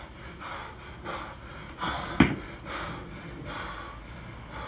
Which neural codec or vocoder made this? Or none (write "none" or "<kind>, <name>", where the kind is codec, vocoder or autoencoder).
none